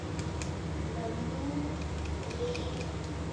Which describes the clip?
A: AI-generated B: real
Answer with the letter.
B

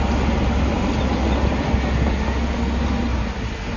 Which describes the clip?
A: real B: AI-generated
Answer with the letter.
A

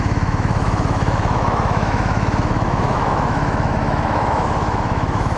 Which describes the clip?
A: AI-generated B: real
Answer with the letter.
A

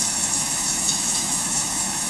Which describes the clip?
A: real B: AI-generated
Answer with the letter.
B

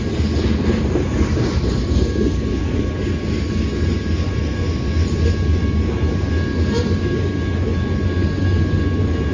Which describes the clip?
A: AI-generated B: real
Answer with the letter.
B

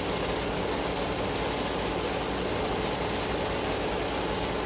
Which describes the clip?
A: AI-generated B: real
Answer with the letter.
B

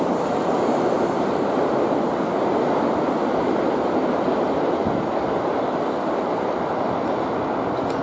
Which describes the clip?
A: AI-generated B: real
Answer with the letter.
B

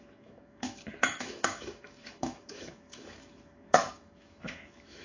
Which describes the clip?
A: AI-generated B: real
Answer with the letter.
A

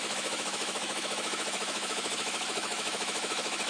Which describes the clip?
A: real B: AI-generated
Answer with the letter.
B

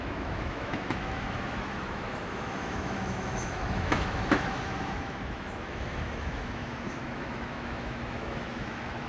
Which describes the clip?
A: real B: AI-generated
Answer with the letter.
B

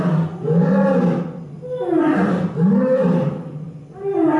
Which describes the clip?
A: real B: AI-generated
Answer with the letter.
A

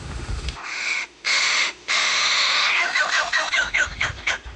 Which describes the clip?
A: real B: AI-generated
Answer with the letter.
B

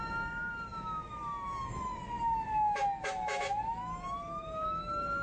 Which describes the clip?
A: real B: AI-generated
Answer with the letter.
B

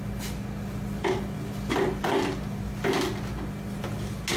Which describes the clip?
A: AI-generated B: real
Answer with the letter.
B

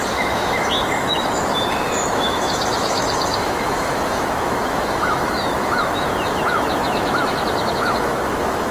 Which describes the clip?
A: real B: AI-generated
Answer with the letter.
B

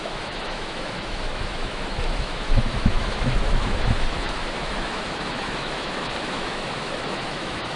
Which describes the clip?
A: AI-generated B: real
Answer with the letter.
A